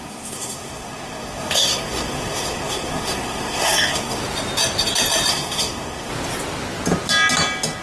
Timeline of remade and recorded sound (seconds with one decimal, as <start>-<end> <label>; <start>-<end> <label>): 0.0-4.2 remade; 4.2-5.3 recorded; 5.3-6.1 remade; 6.1-7.8 recorded